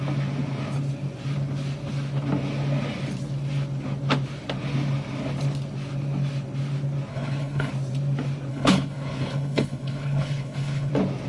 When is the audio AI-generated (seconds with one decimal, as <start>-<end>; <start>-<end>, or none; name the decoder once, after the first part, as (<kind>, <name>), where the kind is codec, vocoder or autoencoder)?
7.1-7.7 (codec, HILCodec); 8.5-10.9